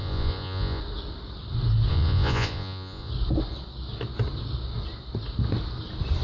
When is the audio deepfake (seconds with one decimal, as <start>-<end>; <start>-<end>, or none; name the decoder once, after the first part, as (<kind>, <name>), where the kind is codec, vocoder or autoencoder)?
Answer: 0.0-0.8 (vocoder, Vocos); 1.9-3.1